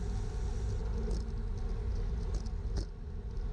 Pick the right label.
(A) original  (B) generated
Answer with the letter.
A